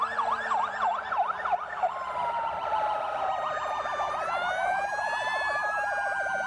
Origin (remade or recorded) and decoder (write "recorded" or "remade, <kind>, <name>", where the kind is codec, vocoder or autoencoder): remade, vocoder, BigVGAN v2